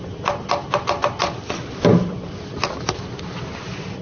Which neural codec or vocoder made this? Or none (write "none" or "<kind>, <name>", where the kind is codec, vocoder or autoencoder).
none